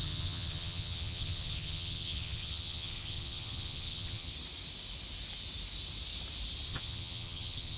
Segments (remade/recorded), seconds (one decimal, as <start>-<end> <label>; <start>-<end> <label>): 0.0-4.3 remade; 4.3-6.7 recorded; 6.7-7.8 remade